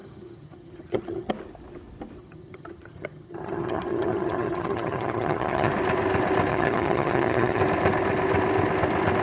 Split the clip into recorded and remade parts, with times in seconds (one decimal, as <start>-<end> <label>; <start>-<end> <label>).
0.0-1.3 remade; 1.3-2.2 recorded; 2.2-5.7 remade; 5.7-6.5 recorded; 6.5-7.6 remade; 7.6-9.2 recorded